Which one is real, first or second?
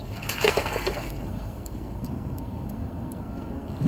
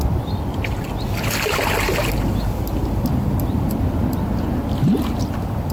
second